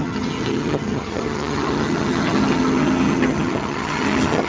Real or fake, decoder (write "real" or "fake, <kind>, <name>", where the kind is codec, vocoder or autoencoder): fake, vocoder, HiFi-GAN